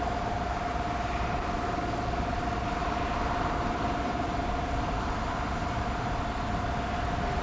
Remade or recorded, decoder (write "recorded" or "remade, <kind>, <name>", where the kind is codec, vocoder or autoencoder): recorded